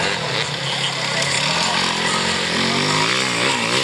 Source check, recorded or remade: recorded